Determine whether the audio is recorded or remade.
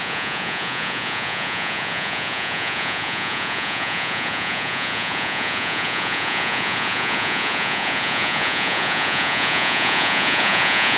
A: remade